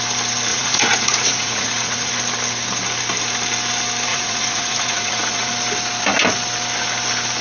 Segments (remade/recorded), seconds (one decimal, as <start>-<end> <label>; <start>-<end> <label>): 0.0-0.5 recorded; 0.5-2.1 remade; 2.1-4.1 recorded; 4.1-5.5 remade; 5.5-7.4 recorded